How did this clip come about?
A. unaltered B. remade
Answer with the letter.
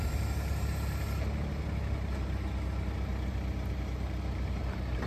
A